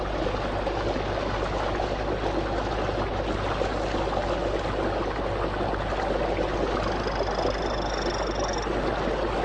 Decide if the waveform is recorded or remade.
recorded